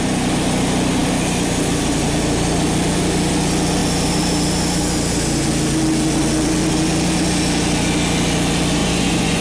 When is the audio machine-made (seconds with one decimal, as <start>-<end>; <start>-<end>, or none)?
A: 8.8-9.4